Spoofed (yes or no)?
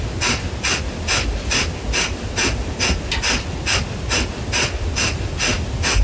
no